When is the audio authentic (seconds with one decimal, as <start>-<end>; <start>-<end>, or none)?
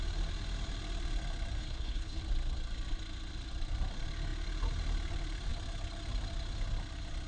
0.0-1.6; 2.2-7.3